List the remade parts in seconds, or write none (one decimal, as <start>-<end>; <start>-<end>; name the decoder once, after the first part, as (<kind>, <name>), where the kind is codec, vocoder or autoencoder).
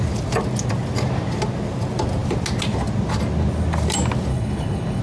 4.3-5.0 (codec, HILCodec)